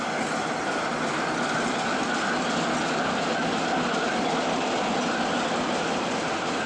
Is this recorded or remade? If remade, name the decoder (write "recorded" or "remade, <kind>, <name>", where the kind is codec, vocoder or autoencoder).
recorded